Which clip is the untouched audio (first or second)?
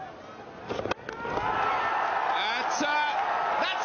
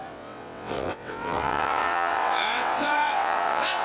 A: first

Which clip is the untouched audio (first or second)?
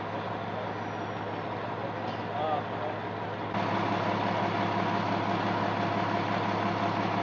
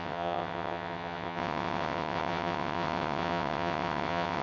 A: first